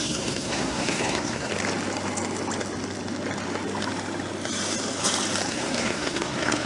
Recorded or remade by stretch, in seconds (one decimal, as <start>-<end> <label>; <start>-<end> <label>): 0.0-1.5 remade; 1.5-5.5 recorded; 5.5-6.7 remade